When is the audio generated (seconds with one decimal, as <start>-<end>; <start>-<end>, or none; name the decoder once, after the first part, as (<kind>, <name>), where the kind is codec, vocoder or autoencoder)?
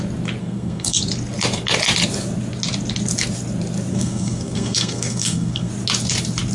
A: 0.4-1.0 (codec, SNAC); 3.9-5.7